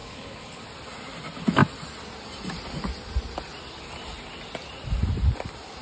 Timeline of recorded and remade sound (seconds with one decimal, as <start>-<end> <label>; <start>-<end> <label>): 0.0-0.6 remade; 0.6-5.8 recorded